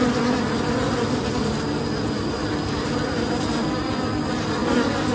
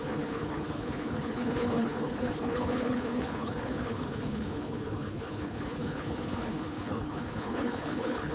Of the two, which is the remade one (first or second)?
second